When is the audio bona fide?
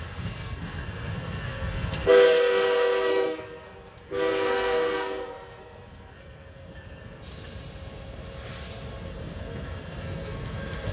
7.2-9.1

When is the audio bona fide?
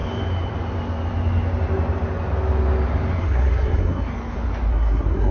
0.0-3.2; 4.1-4.7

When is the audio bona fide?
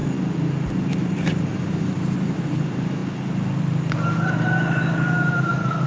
0.0-1.0; 3.0-5.3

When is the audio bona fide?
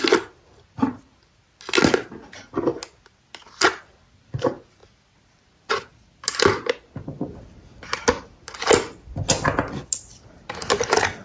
0.0-11.2